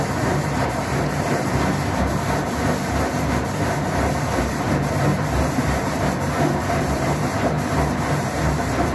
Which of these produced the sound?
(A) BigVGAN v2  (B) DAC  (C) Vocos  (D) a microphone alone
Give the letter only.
A